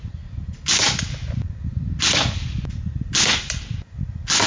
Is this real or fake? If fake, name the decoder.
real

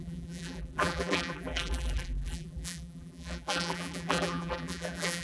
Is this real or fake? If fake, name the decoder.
fake, vocoder, BigVGAN v2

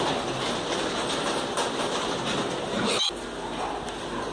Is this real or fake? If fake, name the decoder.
real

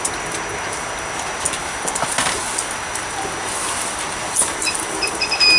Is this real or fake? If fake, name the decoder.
real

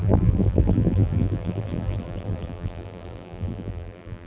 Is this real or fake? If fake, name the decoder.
fake, vocoder, BigVGAN v2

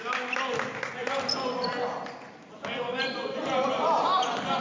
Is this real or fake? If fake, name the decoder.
real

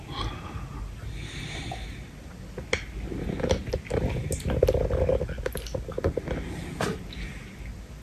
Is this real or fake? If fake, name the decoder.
real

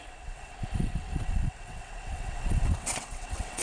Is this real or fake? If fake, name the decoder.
fake, vocoder, WaveNeXt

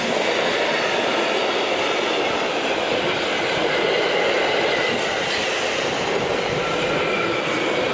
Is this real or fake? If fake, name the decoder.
real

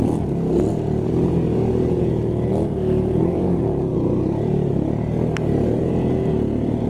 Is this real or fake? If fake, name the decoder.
real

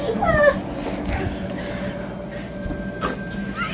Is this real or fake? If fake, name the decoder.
real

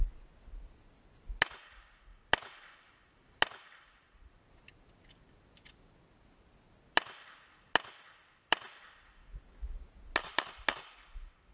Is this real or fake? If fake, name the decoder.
real